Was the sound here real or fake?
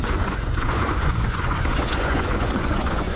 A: fake